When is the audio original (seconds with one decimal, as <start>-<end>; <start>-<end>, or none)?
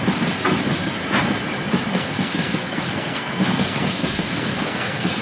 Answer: 0.0-1.9